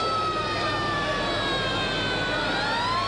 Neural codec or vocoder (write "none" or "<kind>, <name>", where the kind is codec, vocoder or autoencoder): none